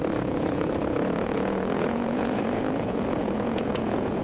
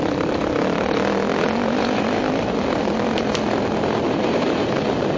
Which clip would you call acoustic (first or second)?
second